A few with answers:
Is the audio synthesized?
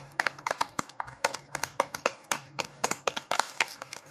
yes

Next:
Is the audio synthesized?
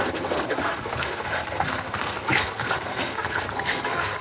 yes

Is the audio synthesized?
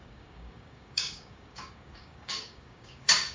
yes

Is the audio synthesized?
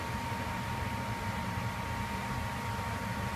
no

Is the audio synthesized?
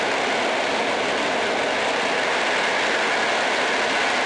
no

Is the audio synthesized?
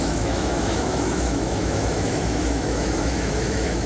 yes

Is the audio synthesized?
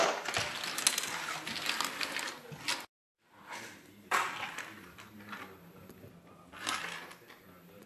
no